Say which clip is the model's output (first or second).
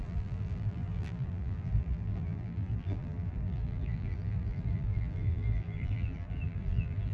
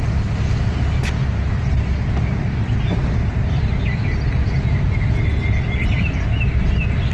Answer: first